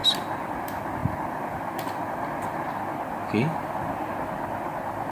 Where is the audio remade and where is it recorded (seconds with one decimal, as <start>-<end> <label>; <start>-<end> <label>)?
0.0-5.1 recorded